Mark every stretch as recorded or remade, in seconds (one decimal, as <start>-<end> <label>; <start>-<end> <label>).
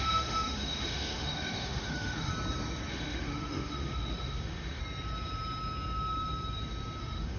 0.0-2.3 remade; 2.3-2.9 recorded; 2.9-4.8 remade; 4.8-7.0 recorded; 7.0-7.4 remade